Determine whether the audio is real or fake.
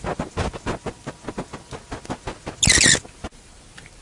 real